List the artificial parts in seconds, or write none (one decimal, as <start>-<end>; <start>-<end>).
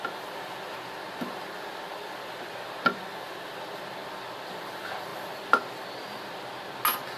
none